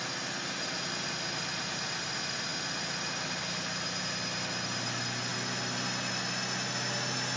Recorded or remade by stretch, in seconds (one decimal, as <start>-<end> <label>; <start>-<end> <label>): 0.0-7.4 recorded